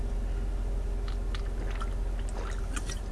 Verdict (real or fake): real